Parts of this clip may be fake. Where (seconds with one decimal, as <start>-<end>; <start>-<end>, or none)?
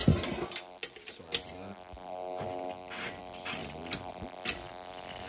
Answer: 3.2-5.3